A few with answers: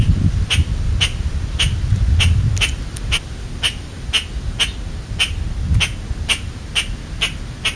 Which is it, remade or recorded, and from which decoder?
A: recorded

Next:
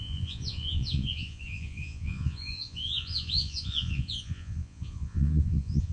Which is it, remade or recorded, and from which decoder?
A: remade, vocoder, Vocos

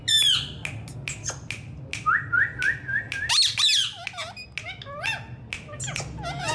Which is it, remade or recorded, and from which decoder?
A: recorded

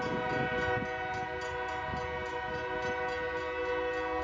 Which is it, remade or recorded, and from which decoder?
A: recorded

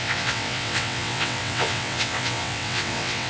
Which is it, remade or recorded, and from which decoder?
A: remade, vocoder, WaveNeXt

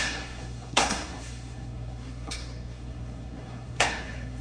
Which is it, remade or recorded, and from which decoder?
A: remade, codec, SNAC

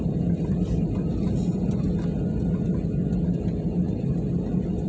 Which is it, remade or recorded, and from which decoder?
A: recorded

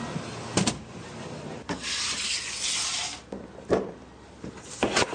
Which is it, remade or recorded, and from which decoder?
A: recorded